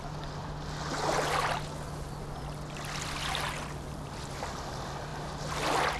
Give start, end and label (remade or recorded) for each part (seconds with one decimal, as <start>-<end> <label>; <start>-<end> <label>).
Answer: 0.0-6.0 recorded